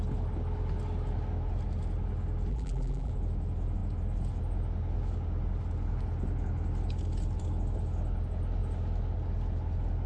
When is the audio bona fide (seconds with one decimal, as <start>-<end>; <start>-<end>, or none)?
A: 0.0-2.5; 3.1-10.1

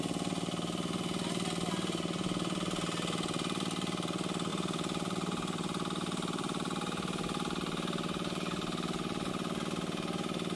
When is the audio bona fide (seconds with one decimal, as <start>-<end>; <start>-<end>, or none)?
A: 0.0-4.5; 9.3-10.6

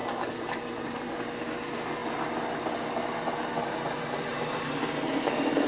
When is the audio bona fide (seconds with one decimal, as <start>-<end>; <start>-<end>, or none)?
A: 1.2-4.3

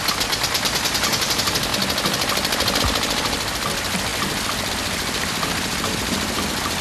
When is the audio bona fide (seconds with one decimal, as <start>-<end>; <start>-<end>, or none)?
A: 1.7-2.8

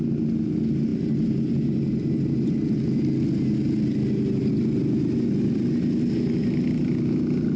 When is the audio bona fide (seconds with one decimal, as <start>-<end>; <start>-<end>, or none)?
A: 0.0-7.6

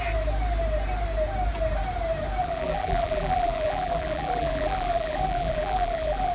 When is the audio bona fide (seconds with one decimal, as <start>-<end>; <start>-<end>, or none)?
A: 0.0-2.4

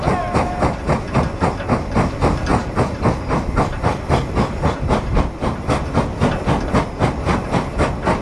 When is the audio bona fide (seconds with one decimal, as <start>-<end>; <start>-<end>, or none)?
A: 0.0-2.5; 4.8-8.2

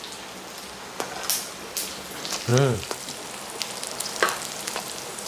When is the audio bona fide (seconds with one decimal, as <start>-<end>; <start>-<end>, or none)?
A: 0.0-2.5